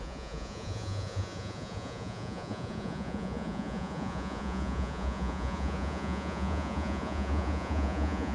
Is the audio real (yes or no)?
no